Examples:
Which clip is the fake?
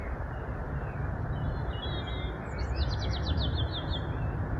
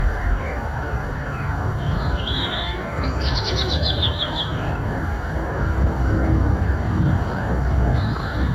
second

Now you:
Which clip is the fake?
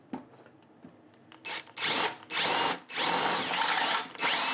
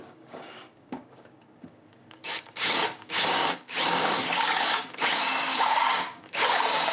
second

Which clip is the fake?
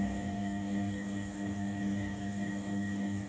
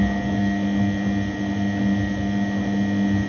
first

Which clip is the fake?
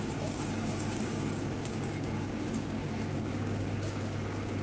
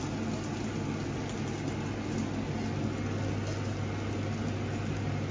first